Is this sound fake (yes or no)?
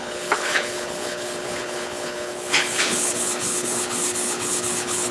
yes